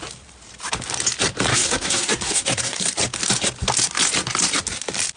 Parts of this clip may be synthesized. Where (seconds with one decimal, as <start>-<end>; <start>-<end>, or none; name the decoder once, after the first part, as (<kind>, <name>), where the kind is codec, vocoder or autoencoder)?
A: 1.5-2.8 (codec, SNAC)